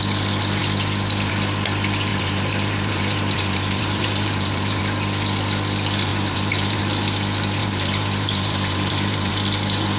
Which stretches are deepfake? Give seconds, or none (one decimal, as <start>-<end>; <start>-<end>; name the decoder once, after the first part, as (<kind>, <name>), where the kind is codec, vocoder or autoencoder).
2.1-4.8 (vocoder, BigVGAN v2); 6.1-6.8; 7.6-9.3